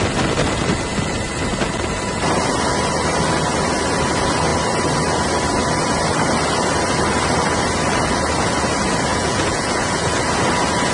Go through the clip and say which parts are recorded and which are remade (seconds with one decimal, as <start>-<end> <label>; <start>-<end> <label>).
0.0-9.1 recorded; 9.1-10.2 remade; 10.2-10.9 recorded